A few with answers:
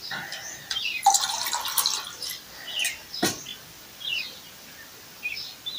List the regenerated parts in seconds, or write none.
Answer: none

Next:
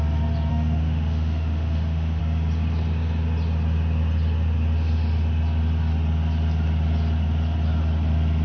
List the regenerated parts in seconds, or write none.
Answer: 0.5-2.2 (autoencoder, DAC-VAE)

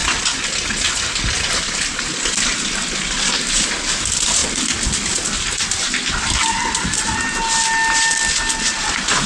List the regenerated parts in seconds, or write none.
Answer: none

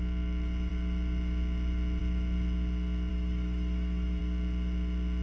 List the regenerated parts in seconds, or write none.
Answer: 3.1-4.2 (autoencoder, DAC-VAE)

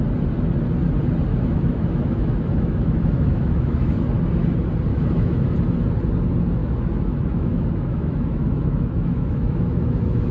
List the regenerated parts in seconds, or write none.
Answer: 1.3-3.9 (autoencoder, DAC-VAE); 4.9-5.6; 6.6-10.3

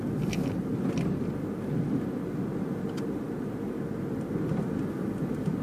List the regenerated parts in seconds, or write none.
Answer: none

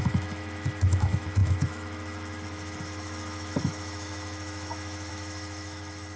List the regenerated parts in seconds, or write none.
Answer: 0.0-6.2 (autoencoder, DAC-VAE)